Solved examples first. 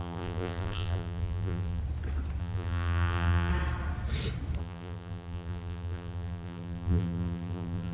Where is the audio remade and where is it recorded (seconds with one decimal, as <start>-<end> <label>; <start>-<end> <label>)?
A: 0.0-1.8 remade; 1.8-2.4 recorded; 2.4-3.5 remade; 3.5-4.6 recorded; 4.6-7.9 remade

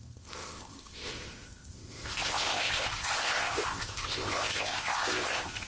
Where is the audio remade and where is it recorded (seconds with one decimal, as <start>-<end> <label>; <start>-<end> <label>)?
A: 0.0-5.7 remade

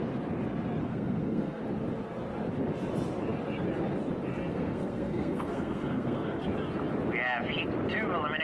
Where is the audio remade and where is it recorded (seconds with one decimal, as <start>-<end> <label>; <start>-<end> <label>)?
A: 0.0-0.8 recorded; 0.8-1.6 remade; 1.6-4.5 recorded; 4.5-6.4 remade; 6.4-8.4 recorded

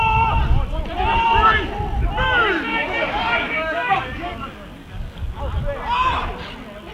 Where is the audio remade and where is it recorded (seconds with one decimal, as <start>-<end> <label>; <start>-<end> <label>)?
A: 0.0-2.7 recorded; 2.7-5.4 remade; 5.4-6.9 recorded

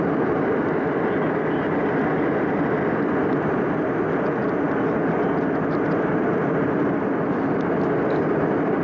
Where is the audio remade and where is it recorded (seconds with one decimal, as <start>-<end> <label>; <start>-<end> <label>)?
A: 0.0-8.8 recorded